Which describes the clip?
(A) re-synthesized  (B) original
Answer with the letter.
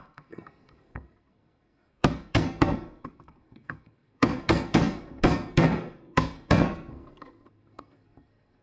A